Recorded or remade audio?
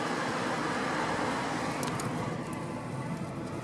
recorded